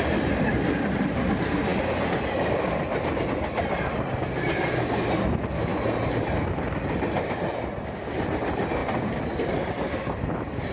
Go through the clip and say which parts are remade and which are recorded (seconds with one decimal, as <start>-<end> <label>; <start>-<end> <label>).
0.0-8.8 recorded; 8.8-10.7 remade